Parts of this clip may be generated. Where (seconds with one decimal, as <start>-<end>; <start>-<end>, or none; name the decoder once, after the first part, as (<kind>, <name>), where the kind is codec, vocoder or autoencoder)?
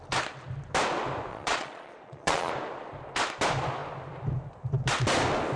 1.3-2.5 (vocoder, Vocos)